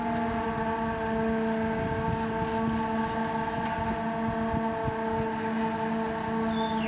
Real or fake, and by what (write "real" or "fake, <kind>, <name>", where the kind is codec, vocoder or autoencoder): real